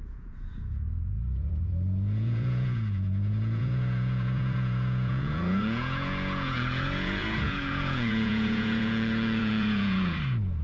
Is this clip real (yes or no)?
no